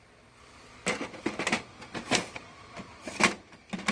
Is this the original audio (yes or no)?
yes